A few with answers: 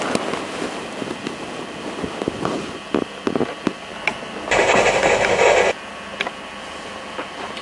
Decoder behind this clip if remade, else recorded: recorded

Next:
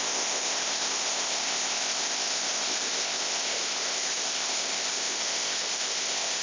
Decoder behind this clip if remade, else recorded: remade, codec, ZipCodec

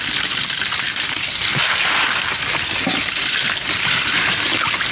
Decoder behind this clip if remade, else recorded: recorded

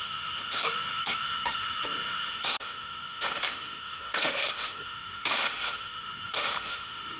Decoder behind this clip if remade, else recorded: remade, autoencoder, DAC-VAE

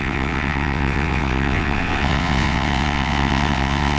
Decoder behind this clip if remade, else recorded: remade, vocoder, WaveNeXt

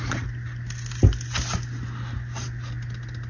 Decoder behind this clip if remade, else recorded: recorded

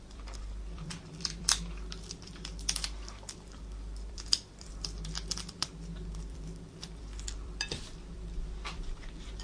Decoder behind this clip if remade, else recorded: remade, vocoder, BigVGAN v2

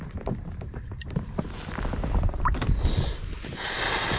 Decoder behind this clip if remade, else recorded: recorded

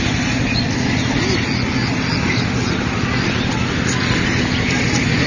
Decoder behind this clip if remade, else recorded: recorded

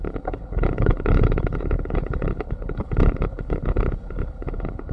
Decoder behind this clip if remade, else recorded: remade, codec, HILCodec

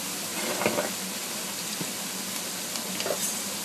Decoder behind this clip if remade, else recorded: recorded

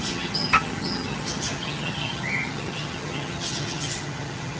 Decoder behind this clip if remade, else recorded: remade, vocoder, HiFi-GAN